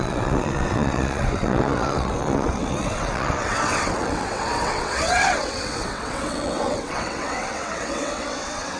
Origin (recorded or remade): remade